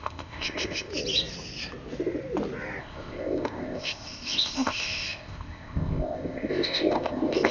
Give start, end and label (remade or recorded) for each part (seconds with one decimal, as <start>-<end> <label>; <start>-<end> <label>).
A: 0.0-0.9 remade; 0.9-2.8 recorded; 2.8-7.5 remade